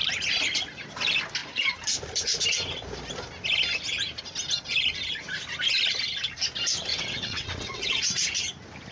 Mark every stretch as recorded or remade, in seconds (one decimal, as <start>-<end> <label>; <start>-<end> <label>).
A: 0.0-6.9 recorded; 6.9-8.0 remade; 8.0-8.9 recorded